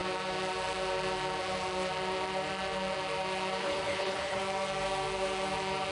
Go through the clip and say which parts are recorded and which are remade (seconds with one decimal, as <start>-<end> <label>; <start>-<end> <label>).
0.0-3.6 recorded; 3.6-4.4 remade; 4.4-5.9 recorded